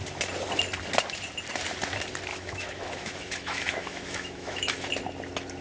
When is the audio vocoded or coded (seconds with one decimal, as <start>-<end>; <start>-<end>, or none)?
2.3-4.9